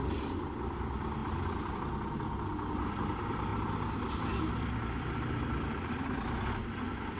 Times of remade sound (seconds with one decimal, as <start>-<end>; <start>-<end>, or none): none